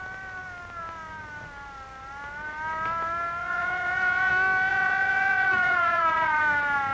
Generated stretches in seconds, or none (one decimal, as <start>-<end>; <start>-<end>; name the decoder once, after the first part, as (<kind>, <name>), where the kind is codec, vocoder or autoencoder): 3.4-4.3 (vocoder, Vocos); 4.7-6.4